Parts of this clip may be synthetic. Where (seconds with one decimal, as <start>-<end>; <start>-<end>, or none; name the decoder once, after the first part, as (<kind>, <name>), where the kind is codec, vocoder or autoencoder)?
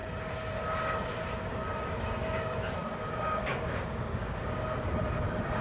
1.5-4.9 (codec, DAC)